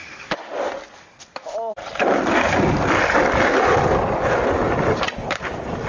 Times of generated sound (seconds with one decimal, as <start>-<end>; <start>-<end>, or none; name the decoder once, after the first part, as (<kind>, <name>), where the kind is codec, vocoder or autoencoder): none